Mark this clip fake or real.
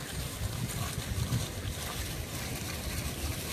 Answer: real